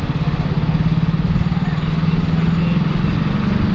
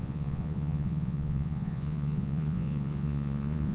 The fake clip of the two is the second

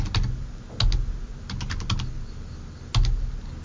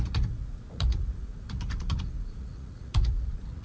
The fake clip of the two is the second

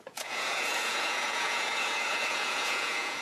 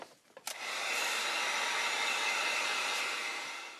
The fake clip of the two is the first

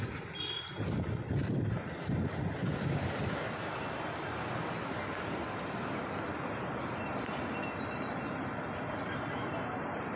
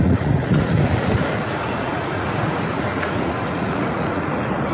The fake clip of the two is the second